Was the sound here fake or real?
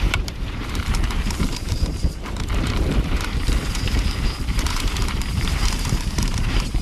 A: fake